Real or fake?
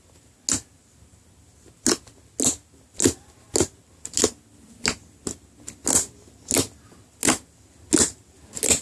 real